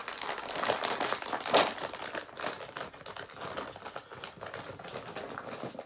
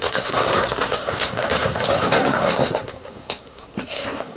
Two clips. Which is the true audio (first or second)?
first